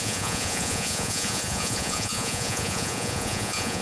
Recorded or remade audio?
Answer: remade